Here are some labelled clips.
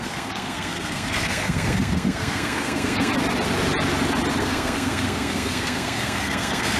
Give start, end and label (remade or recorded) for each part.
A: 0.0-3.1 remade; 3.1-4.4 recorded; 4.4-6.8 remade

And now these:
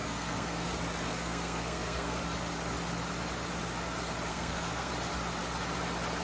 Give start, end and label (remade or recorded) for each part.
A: 0.0-0.7 remade; 0.7-1.1 recorded; 1.1-2.2 remade; 2.2-4.3 recorded; 4.3-4.9 remade; 4.9-6.2 recorded